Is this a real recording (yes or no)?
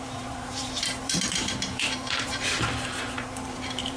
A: no